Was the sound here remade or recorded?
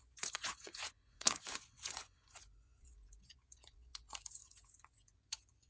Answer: remade